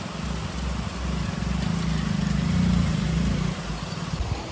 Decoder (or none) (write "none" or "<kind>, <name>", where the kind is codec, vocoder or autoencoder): none